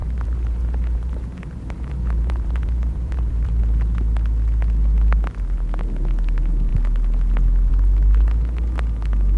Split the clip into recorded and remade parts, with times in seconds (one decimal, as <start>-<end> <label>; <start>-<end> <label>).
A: 0.0-3.6 remade; 3.6-9.4 recorded